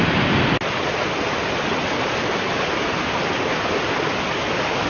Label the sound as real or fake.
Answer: real